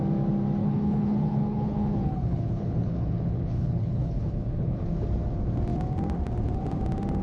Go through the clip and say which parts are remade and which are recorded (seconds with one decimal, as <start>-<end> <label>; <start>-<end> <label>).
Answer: 0.0-0.6 recorded; 0.6-4.9 remade; 4.9-7.2 recorded